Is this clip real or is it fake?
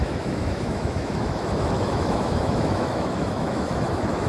fake